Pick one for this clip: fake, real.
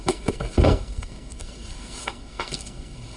fake